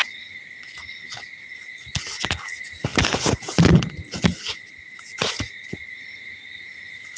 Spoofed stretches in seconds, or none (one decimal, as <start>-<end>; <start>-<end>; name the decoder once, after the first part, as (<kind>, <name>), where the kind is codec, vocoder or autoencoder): none

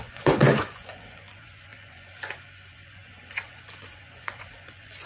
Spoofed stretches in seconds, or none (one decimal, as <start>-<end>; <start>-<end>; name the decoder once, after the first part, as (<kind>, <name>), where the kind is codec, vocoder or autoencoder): 0.0-5.1 (vocoder, Vocos)

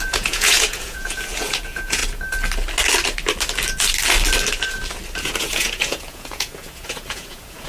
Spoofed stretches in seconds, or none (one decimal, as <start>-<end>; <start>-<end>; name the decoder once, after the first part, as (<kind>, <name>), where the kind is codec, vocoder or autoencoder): 0.0-2.0 (vocoder, Vocos); 5.2-7.7

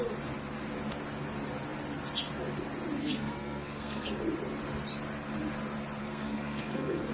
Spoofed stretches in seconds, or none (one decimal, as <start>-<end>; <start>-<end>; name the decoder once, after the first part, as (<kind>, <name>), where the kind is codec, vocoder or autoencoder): 3.0-4.2 (codec, SNAC); 6.0-7.1

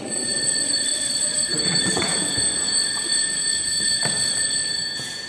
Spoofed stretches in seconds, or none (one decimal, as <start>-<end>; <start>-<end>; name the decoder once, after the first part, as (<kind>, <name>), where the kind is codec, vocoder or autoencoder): 0.0-2.1 (vocoder, Vocos)

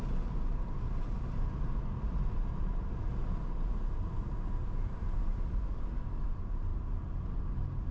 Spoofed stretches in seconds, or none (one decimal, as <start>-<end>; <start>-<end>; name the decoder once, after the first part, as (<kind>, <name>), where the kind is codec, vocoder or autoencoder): none

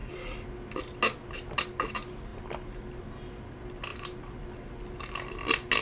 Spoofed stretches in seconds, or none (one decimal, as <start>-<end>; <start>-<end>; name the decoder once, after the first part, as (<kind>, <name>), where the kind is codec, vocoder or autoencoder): none

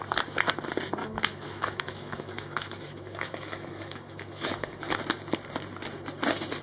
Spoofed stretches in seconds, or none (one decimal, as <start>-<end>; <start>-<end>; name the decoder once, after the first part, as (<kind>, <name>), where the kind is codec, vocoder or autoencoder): 1.0-5.0 (autoencoder, DAC-VAE)